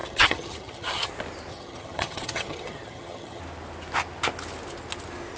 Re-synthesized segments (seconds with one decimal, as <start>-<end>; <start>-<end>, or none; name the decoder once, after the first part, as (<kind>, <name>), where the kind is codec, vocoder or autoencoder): 0.0-1.1 (vocoder, HiFi-GAN); 1.5-3.4